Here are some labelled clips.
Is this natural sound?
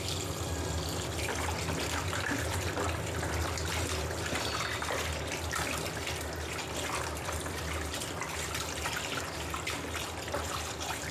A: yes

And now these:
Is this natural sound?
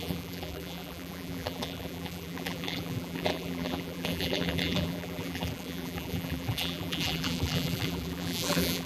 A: no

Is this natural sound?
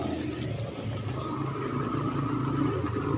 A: yes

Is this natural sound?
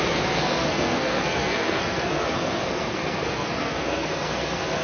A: no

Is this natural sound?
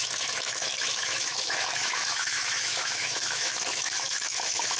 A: no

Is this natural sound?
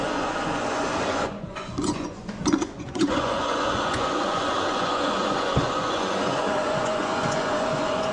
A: no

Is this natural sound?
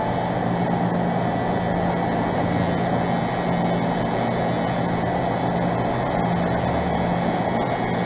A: yes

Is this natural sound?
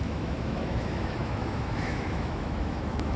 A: no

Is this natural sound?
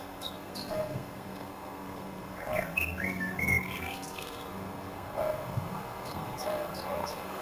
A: no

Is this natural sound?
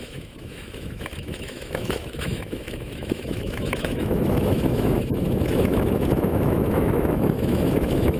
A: no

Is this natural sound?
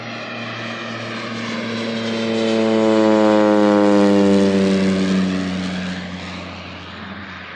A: yes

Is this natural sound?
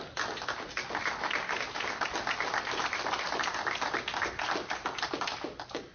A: yes